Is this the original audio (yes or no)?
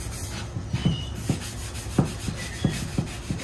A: yes